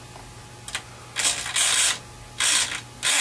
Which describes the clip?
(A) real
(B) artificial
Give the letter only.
A